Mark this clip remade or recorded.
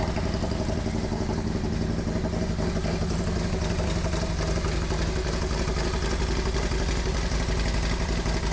recorded